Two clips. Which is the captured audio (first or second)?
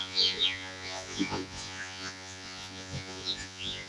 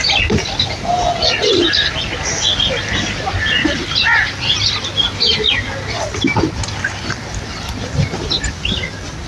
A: second